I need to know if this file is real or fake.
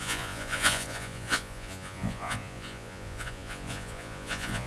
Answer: fake